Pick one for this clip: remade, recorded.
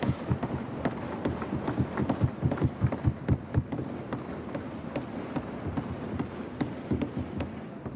recorded